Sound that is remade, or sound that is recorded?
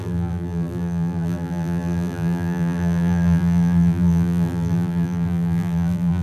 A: remade